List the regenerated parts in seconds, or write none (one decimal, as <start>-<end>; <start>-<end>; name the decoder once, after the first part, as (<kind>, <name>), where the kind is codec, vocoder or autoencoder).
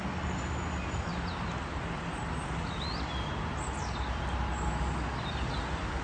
none